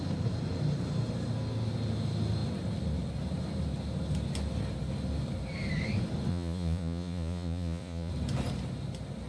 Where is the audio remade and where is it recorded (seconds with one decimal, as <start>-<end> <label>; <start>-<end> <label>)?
0.0-6.3 recorded; 6.3-8.1 remade; 8.1-9.3 recorded